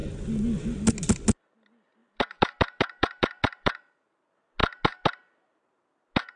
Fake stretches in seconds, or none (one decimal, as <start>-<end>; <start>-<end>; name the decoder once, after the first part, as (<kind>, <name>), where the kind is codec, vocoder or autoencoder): 2.0-4.1 (vocoder, BigVGAN v2)